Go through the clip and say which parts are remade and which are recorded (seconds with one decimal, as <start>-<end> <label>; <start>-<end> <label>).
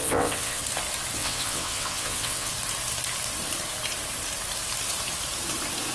0.0-0.6 remade; 0.6-1.2 recorded; 1.2-2.5 remade; 2.5-5.9 recorded